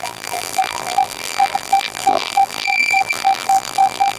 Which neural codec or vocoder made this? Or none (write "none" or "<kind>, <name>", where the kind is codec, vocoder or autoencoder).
vocoder, BigVGAN v2